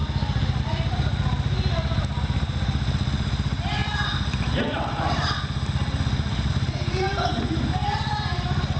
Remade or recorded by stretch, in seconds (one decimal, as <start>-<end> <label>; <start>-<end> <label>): 0.0-8.8 recorded